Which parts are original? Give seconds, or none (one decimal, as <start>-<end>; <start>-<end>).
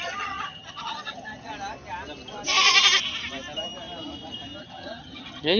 1.5-4.6